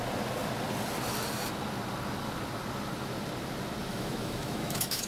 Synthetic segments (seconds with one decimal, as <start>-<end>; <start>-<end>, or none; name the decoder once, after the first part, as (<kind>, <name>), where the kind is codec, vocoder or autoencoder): 3.9-5.1 (autoencoder, DAC-VAE)